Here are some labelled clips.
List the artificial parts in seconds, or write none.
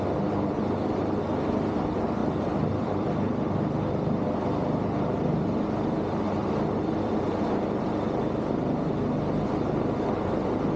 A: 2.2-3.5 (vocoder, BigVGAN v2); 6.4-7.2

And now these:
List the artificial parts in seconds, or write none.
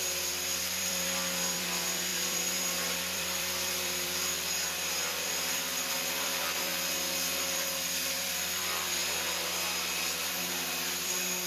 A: 0.0-6.7 (vocoder, BigVGAN v2); 7.4-9.0; 10.2-11.5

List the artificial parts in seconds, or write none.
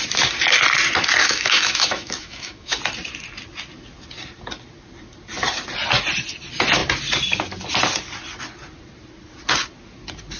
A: 1.2-2.8 (autoencoder, DAC-VAE)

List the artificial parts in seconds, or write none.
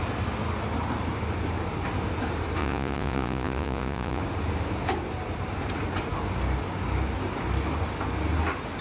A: 2.6-4.2 (vocoder, Vocos)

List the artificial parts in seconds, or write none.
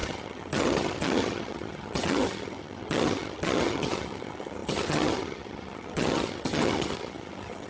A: 0.0-7.7 (vocoder, HiFi-GAN)